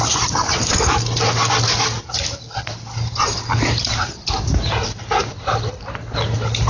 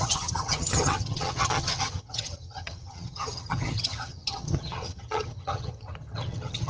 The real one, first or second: first